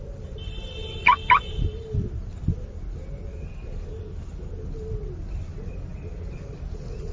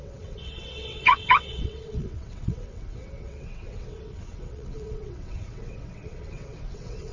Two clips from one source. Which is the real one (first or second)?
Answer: first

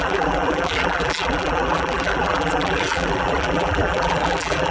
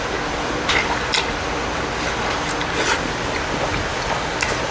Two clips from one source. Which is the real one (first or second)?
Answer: second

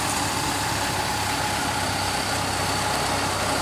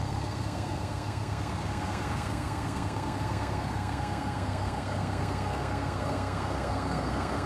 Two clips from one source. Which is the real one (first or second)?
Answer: first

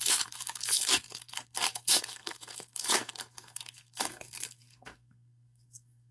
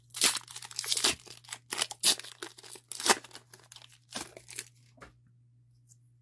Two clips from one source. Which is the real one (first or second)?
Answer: second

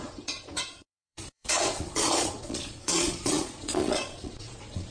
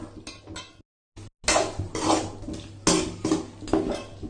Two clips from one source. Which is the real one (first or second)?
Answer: second